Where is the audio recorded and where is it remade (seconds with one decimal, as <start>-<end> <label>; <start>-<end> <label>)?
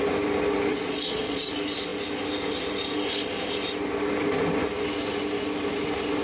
0.0-0.7 recorded; 0.7-1.5 remade; 1.5-6.2 recorded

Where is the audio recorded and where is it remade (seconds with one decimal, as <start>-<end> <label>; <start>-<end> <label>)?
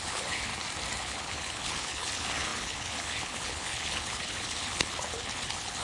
0.0-0.5 remade; 0.5-1.0 recorded; 1.0-5.8 remade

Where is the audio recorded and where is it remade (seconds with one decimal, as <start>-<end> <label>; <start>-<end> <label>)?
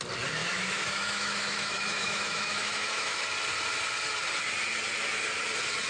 0.0-0.4 recorded; 0.4-3.2 remade; 3.2-5.9 recorded